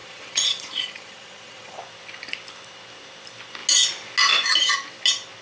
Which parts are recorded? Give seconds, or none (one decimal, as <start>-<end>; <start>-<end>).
1.8-5.4